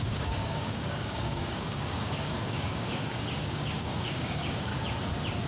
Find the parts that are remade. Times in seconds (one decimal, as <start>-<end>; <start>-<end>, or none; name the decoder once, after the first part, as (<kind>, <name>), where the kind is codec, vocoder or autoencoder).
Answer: 0.0-4.7 (codec, DAC)